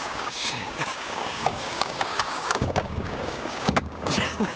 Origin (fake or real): fake